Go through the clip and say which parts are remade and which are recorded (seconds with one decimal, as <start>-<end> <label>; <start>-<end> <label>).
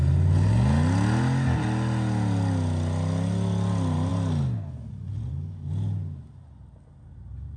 0.0-7.6 recorded